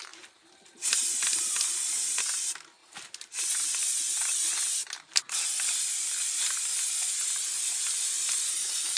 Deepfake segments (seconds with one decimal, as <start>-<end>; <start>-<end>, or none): none